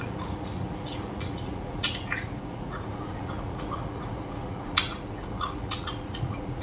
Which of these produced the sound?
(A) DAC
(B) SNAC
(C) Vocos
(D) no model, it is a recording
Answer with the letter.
C